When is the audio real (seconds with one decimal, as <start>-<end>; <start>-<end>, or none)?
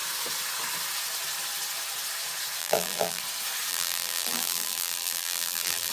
0.0-2.6; 3.2-3.7